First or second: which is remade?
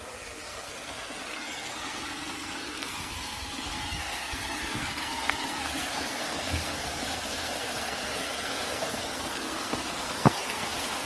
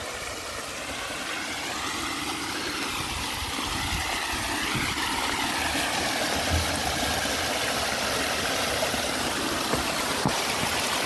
first